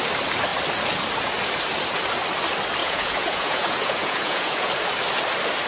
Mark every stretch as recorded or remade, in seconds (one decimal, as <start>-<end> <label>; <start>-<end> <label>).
0.0-2.8 recorded; 2.8-4.7 remade; 4.7-5.7 recorded